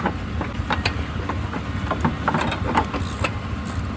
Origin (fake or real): real